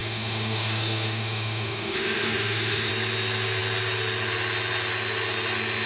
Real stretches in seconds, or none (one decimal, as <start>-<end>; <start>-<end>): 2.9-5.9

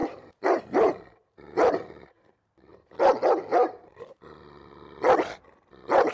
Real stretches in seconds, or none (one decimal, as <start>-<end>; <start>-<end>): 3.0-3.5; 4.2-6.1

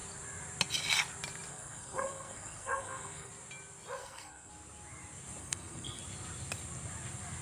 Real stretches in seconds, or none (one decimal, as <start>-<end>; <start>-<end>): 0.0-1.5; 3.3-4.0; 4.5-5.4; 6.0-7.4